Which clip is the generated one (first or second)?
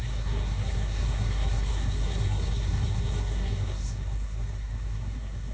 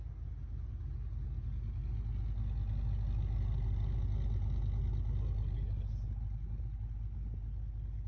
first